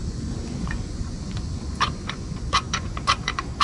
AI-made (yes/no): yes